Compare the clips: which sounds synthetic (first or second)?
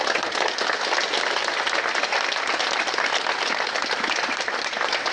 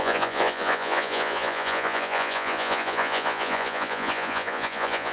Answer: second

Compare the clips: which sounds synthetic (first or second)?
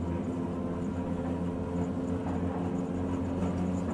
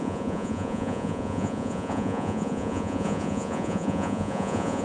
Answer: second